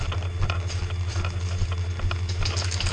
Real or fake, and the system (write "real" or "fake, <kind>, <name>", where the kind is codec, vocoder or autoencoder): real